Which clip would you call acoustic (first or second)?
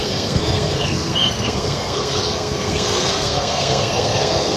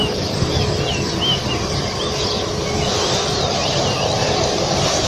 second